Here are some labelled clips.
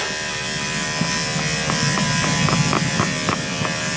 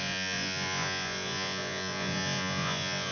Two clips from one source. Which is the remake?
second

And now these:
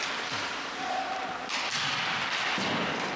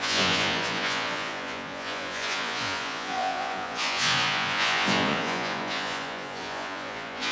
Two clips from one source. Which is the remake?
second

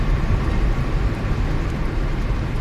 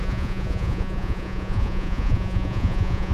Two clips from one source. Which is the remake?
second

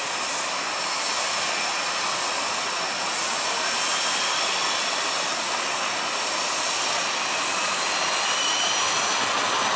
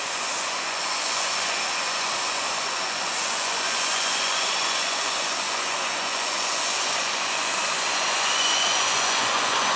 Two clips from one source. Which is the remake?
second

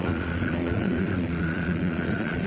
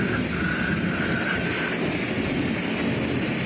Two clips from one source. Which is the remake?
first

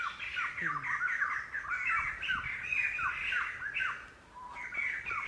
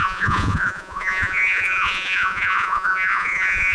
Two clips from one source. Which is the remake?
second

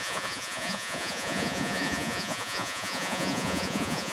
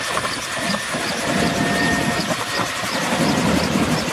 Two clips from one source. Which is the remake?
first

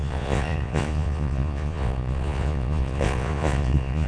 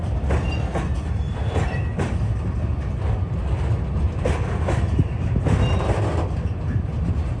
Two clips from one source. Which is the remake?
first